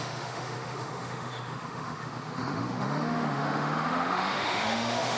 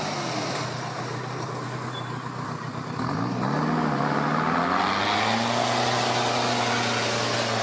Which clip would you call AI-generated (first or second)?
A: first